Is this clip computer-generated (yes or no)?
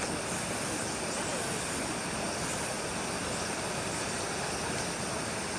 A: no